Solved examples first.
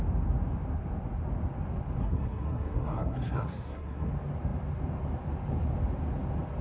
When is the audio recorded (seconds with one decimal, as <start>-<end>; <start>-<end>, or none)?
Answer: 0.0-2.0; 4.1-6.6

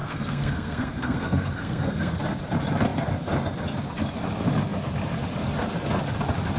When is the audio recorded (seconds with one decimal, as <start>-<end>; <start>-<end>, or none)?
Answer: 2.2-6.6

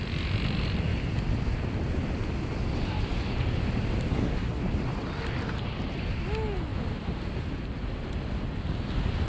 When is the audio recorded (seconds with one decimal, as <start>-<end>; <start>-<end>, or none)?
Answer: 0.0-4.1; 4.6-9.3

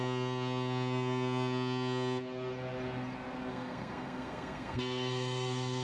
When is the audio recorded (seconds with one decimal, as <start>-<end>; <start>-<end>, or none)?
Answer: 0.0-3.5

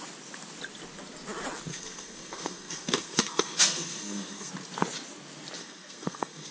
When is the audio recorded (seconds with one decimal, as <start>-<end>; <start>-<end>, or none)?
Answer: 0.0-1.7; 4.5-5.6

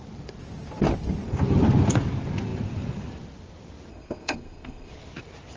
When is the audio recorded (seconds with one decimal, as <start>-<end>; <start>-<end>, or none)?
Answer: 0.0-3.9; 4.9-5.6